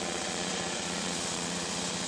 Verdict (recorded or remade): remade